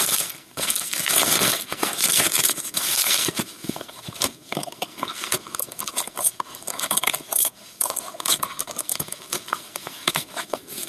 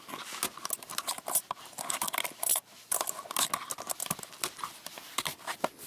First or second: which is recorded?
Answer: second